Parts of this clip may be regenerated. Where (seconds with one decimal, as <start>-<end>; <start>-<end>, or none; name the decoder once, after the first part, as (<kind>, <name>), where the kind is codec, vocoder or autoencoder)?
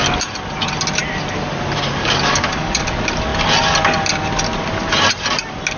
2.0-2.8 (codec, DAC)